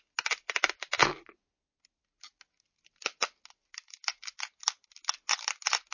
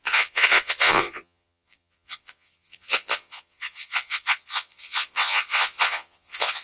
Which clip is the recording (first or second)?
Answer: first